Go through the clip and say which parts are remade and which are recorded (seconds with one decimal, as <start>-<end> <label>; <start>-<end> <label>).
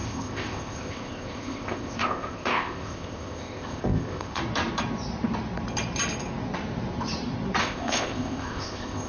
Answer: 0.0-4.4 remade; 4.4-7.6 recorded; 7.6-9.1 remade